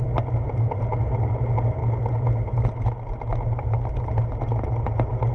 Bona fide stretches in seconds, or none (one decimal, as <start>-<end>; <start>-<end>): 0.0-5.3